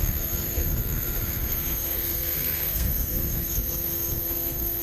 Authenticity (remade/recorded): remade